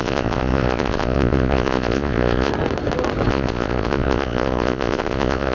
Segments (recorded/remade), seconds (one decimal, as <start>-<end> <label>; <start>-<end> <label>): 0.0-2.5 remade; 2.5-3.3 recorded; 3.3-5.5 remade